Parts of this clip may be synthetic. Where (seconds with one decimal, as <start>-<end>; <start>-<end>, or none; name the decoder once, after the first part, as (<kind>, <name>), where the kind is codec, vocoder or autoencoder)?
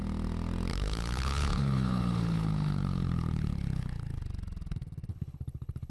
0.7-4.2 (codec, HILCodec); 5.1-5.9